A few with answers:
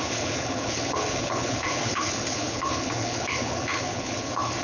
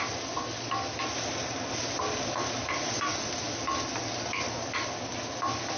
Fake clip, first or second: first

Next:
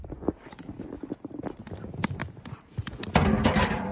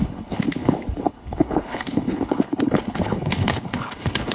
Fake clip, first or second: second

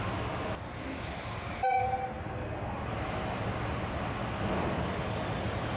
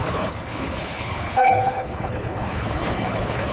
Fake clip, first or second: second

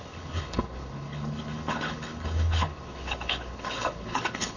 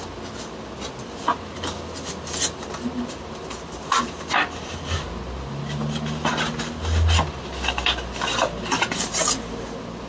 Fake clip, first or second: first